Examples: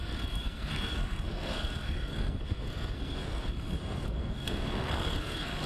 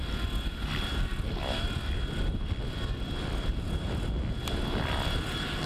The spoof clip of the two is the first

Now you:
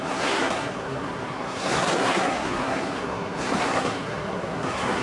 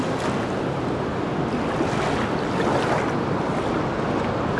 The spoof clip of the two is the first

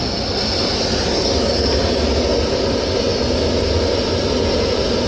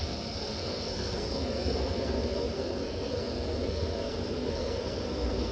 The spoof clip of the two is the second